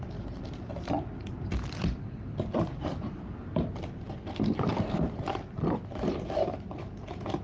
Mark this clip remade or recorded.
remade